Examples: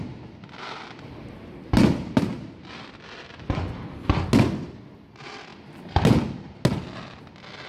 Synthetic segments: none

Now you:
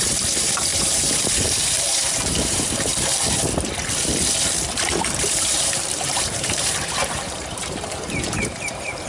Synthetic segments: 0.0-2.9 (vocoder, BigVGAN v2); 5.3-9.1

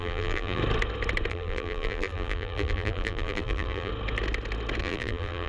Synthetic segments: 0.0-0.6 (vocoder, BigVGAN v2); 1.3-3.9; 4.8-5.5

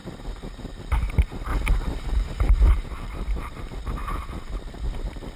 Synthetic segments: 0.0-5.4 (vocoder, BigVGAN v2)

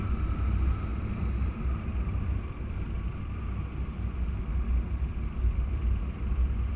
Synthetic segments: 0.9-3.7 (vocoder, BigVGAN v2); 5.1-6.2

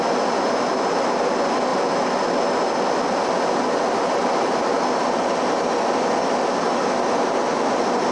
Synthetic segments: none